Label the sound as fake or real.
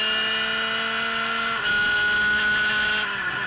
real